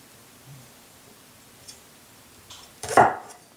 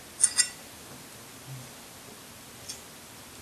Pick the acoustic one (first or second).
second